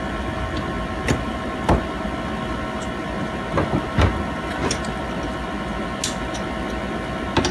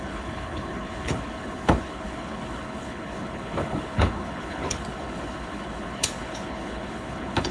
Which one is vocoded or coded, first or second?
second